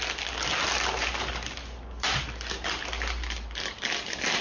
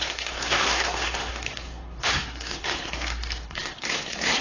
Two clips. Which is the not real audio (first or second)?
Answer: second